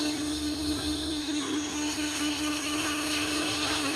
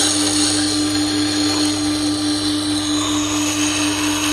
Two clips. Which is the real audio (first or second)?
second